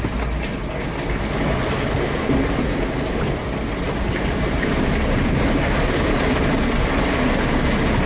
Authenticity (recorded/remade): recorded